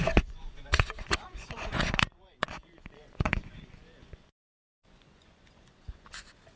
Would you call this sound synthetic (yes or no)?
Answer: yes